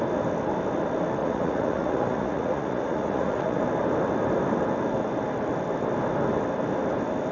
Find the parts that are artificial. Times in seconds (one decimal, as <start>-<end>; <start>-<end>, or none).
1.2-3.6